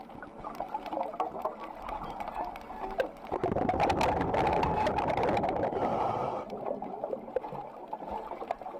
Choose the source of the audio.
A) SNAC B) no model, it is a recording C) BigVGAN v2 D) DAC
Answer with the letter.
B